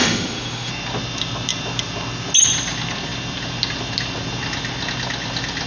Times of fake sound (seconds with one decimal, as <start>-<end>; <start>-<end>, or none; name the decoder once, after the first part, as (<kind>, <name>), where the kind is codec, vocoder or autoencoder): 0.0-0.7 (autoencoder, DAC-VAE)

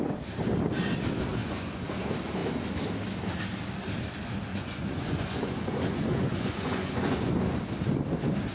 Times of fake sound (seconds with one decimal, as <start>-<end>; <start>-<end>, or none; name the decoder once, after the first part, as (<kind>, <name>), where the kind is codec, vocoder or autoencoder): 1.4-1.9 (vocoder, Vocos); 4.5-7.4